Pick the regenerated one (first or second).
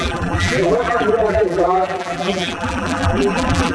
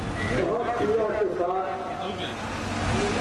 first